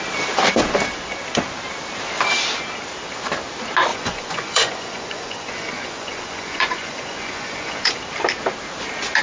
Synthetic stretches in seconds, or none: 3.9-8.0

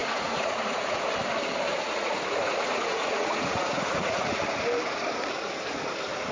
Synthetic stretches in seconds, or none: 0.0-1.1; 1.7-4.4

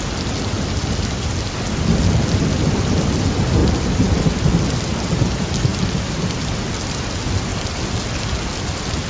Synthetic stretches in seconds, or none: none

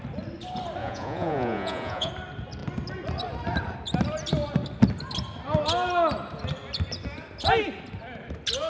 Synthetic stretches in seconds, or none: 0.8-2.1